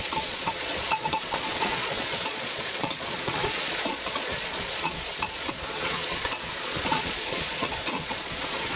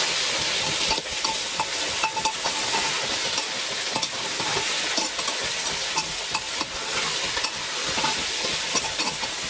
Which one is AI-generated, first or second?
first